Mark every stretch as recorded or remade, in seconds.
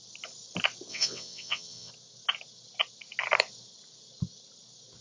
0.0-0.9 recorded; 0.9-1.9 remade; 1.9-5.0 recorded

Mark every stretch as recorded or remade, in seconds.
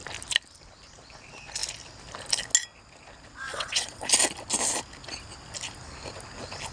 0.0-3.5 recorded; 3.5-4.1 remade; 4.1-6.7 recorded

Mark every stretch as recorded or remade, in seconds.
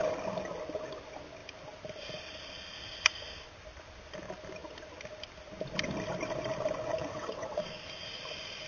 0.0-7.0 recorded; 7.0-7.7 remade; 7.7-8.7 recorded